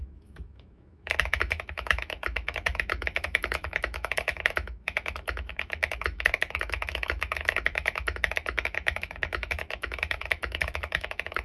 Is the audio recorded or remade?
remade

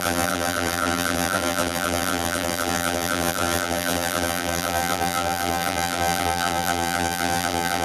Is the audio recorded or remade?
remade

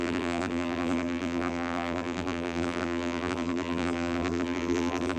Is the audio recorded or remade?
remade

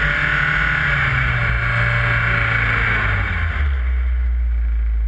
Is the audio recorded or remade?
recorded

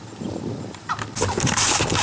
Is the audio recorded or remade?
recorded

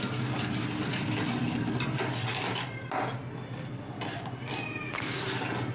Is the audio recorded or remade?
recorded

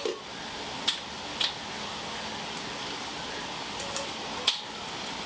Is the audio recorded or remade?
recorded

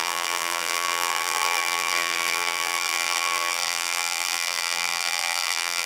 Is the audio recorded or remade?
remade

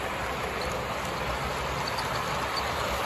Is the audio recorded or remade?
recorded